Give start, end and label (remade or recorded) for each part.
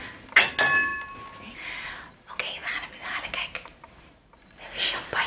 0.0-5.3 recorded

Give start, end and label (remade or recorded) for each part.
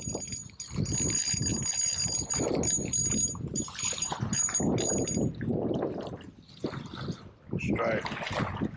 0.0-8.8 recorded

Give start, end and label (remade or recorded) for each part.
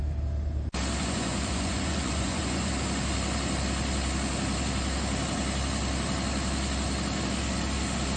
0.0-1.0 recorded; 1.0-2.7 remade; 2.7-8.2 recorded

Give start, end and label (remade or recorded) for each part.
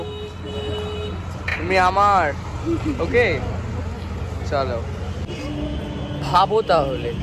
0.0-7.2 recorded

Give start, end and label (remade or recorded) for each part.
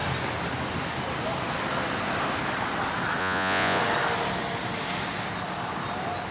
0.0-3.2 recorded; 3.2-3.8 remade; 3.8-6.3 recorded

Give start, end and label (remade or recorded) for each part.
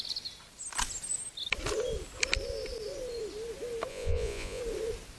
0.0-3.9 recorded; 3.9-4.6 remade; 4.6-5.2 recorded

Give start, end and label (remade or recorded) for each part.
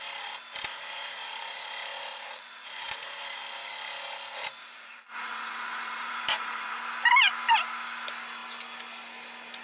0.0-0.7 recorded; 0.7-3.2 remade; 3.2-4.6 recorded; 4.6-6.8 remade; 6.8-9.6 recorded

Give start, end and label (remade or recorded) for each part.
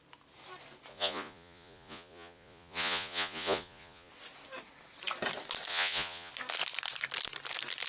0.0-0.9 recorded; 0.9-4.1 remade; 4.1-5.7 recorded; 5.7-6.3 remade; 6.3-7.9 recorded